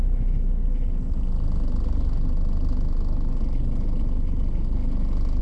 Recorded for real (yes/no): yes